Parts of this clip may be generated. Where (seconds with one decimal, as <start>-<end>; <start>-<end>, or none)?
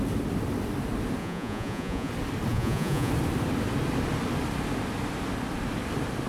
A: 1.2-2.1; 2.5-3.1